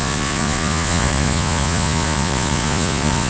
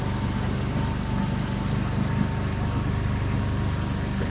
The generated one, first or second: first